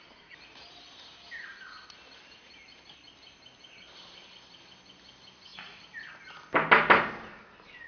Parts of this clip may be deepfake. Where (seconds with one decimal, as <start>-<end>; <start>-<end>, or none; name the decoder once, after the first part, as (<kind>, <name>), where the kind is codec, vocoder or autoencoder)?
none